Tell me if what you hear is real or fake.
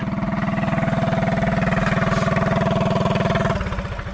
real